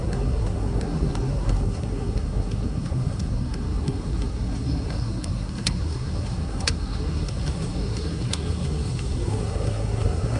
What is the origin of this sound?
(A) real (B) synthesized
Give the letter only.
B